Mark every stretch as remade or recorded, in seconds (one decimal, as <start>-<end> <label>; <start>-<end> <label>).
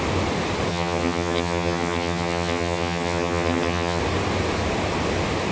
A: 0.0-0.7 recorded; 0.7-4.0 remade; 4.0-5.5 recorded